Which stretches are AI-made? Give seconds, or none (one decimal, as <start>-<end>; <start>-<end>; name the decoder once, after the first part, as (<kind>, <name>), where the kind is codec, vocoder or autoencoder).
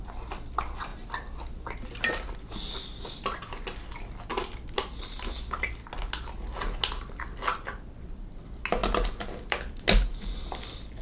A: none